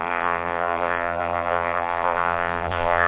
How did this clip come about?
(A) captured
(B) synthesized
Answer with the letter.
B